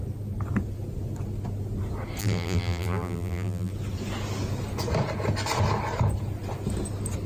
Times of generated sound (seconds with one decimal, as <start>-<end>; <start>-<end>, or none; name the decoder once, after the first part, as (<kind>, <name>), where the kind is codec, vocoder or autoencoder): 2.2-3.7 (vocoder, BigVGAN v2)